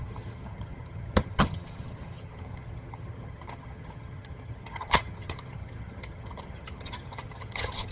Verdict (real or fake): fake